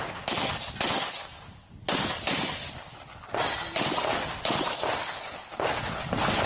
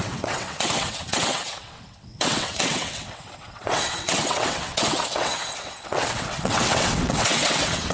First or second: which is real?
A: first